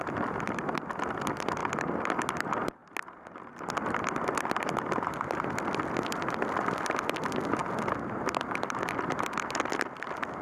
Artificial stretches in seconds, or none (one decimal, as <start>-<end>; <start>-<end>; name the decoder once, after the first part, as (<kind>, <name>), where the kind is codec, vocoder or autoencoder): none